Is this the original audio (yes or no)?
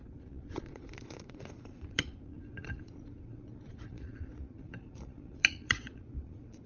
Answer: no